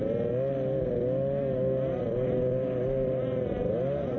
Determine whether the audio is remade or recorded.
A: recorded